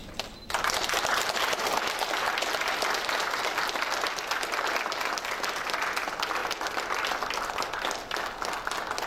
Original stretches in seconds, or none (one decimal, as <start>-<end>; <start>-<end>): 0.0-9.1

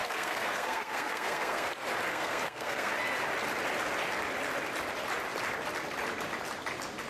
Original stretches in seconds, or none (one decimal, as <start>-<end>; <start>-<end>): 1.7-2.1; 2.9-7.1

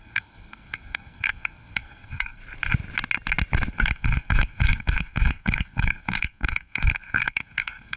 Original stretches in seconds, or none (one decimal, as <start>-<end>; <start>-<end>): 2.4-3.7

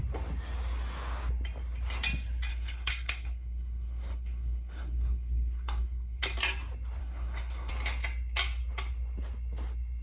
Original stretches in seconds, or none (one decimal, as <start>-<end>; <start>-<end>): 0.0-2.5; 6.2-7.0; 7.7-10.0

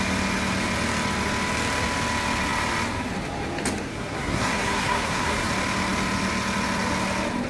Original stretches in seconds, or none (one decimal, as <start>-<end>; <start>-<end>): 0.0-3.9; 5.5-7.5

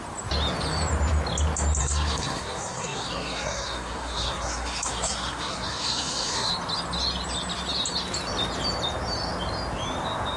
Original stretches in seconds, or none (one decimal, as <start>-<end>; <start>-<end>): 0.0-1.8; 6.5-10.4